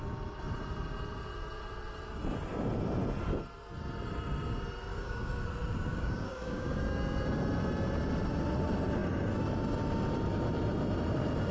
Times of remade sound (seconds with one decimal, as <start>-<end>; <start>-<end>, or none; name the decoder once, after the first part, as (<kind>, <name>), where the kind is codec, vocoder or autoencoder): 4.9-5.5 (codec, DAC); 5.9-6.8

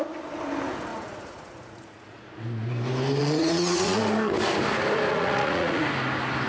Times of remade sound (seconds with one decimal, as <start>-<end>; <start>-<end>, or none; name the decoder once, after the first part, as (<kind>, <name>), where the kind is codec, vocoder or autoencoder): 0.9-2.4 (vocoder, Vocos); 3.2-4.0; 5.1-5.8

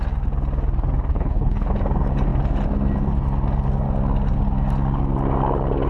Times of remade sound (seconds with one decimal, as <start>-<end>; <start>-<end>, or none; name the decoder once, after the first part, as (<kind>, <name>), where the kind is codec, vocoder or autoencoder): 1.1-1.7 (codec, HILCodec)

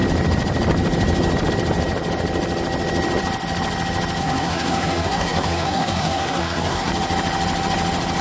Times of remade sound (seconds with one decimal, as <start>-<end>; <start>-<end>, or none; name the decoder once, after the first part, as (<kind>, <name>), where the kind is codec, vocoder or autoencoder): 4.2-6.9 (codec, SNAC)

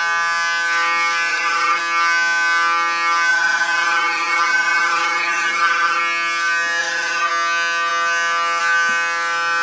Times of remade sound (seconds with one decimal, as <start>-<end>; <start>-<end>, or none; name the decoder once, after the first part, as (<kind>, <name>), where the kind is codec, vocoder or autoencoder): 1.3-1.8 (vocoder, Vocos); 3.3-6.0; 6.8-7.3

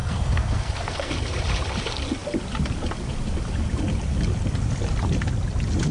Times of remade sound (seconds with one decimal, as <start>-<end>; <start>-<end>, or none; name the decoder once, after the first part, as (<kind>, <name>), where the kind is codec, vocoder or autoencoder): 0.0-1.1 (codec, SNAC)

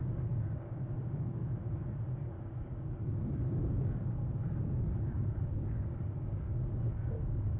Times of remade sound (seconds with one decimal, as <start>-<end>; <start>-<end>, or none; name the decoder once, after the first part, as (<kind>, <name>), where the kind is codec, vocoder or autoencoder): 0.0-1.4 (codec, DAC); 2.4-7.6